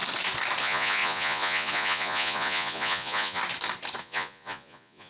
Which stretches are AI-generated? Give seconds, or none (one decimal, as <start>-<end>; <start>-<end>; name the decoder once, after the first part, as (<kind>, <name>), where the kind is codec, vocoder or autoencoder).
0.6-3.4 (vocoder, Vocos); 4.0-5.1